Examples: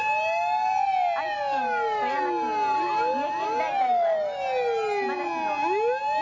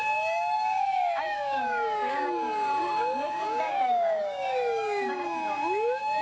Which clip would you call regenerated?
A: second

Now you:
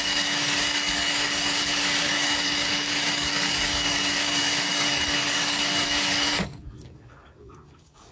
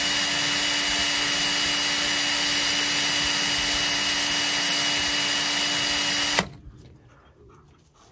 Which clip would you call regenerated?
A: first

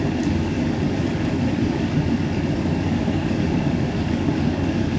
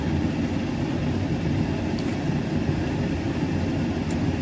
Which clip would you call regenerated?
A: first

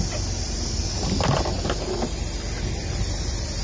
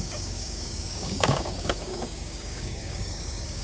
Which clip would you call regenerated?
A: second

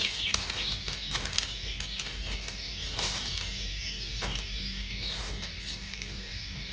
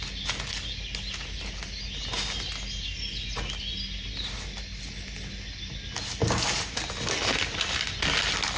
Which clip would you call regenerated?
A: first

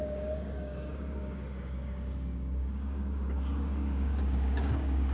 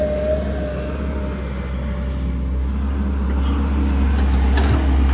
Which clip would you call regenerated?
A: first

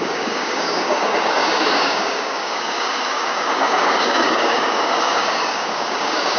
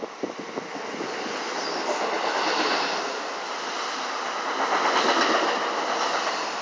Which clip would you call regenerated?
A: first